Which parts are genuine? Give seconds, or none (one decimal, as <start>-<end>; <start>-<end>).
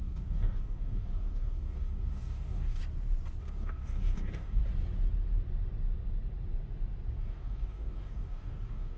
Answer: 2.8-3.4; 4.6-7.2